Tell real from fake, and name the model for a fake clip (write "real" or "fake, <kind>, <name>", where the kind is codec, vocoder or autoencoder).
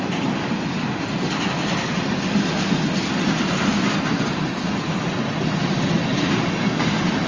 real